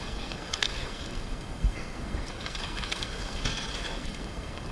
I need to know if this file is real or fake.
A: fake